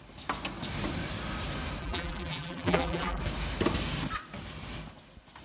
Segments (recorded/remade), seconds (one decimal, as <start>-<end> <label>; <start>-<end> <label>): 0.0-1.8 recorded; 1.8-3.2 remade; 3.2-5.4 recorded